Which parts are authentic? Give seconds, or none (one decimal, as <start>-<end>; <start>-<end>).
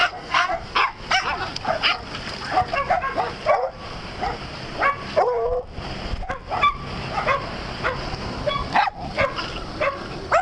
0.6-10.4